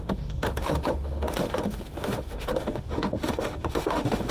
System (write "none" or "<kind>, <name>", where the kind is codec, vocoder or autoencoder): autoencoder, DAC-VAE